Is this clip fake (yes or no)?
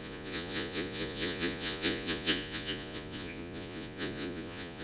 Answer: yes